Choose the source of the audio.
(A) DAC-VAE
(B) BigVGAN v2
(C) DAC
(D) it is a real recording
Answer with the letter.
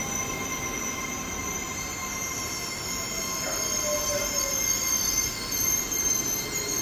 D